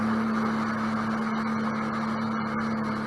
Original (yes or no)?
yes